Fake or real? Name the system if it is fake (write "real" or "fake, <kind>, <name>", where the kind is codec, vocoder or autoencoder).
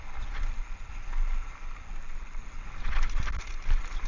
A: real